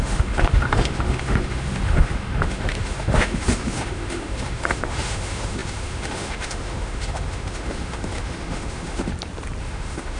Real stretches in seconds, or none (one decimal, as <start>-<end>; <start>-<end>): 9.1-9.6